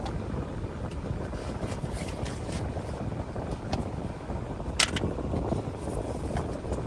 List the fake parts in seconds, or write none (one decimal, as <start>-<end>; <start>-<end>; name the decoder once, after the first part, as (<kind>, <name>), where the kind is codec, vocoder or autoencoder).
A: none